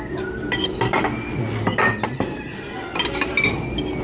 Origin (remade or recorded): recorded